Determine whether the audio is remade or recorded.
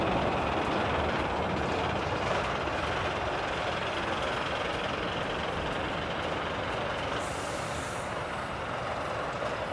remade